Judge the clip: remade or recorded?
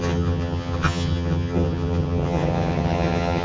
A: remade